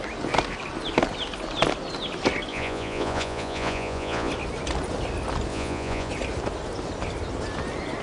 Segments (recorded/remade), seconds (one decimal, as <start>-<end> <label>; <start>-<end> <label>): 0.0-2.5 recorded; 2.5-4.3 remade; 4.3-5.5 recorded; 5.5-6.1 remade; 6.1-8.0 recorded